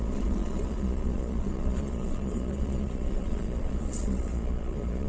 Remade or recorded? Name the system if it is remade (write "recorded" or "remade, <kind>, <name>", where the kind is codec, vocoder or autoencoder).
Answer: remade, vocoder, Vocos